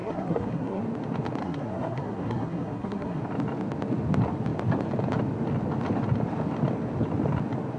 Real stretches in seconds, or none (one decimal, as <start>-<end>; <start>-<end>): 0.8-1.4; 3.2-7.8